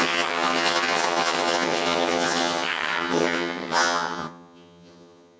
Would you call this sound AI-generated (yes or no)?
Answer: yes